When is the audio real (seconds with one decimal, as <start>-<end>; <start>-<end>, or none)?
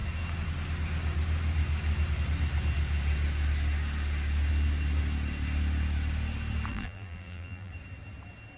0.0-6.7; 7.7-8.6